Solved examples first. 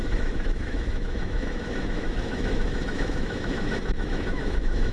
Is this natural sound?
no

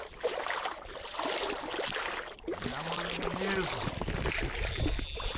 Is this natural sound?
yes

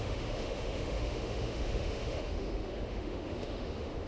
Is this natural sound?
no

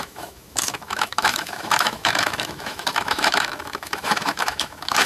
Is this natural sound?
no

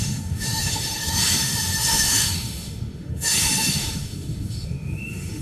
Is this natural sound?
no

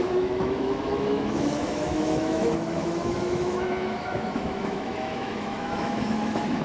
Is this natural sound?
no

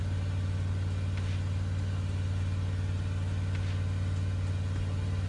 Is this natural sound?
yes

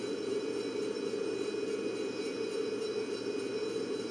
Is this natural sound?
yes